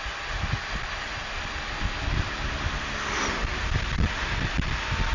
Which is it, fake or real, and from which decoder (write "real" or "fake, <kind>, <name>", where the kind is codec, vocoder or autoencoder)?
real